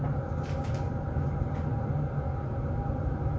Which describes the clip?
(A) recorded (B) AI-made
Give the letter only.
A